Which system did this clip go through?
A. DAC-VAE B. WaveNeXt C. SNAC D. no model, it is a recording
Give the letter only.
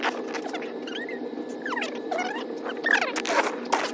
D